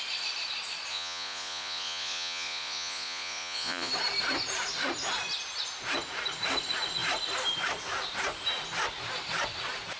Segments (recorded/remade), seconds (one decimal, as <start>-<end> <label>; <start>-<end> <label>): 0.0-0.9 recorded; 0.9-3.9 remade; 3.9-10.0 recorded